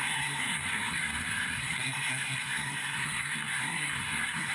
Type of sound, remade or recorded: remade